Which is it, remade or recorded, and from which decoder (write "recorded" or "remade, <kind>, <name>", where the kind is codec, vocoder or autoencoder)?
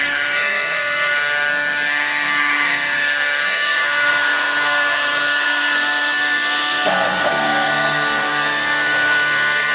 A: remade, codec, SNAC